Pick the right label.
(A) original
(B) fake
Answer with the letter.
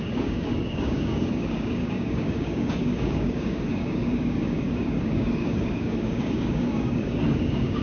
B